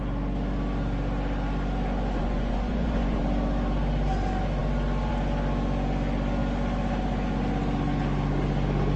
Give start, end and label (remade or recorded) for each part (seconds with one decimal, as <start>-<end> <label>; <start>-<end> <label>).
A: 0.0-2.2 recorded; 2.2-3.2 remade; 3.2-9.0 recorded